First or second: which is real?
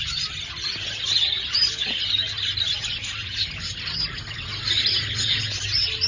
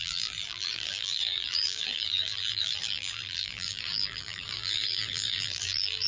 first